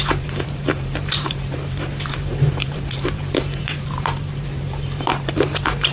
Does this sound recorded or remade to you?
remade